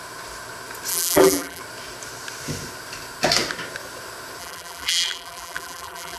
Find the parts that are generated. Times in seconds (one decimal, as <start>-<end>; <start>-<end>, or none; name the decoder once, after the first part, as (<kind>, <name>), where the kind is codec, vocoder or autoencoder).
0.9-1.6 (vocoder, BigVGAN v2); 4.4-6.2